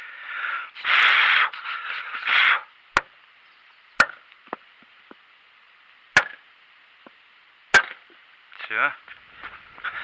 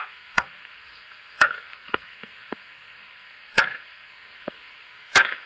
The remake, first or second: second